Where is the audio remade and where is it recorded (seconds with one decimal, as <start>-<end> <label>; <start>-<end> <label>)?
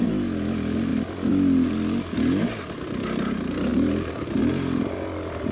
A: 0.0-5.5 recorded